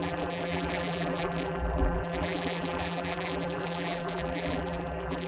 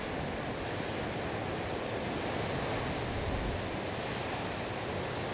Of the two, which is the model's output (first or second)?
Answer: first